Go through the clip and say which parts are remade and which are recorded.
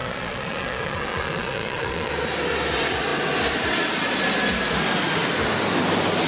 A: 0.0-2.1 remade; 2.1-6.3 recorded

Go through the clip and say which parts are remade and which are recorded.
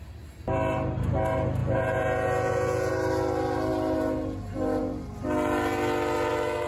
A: 0.0-1.6 recorded; 1.6-2.9 remade; 2.9-6.7 recorded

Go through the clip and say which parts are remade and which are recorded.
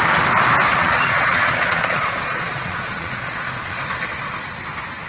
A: 0.0-0.7 recorded; 0.7-3.8 remade; 3.8-5.1 recorded